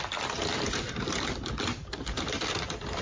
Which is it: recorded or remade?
recorded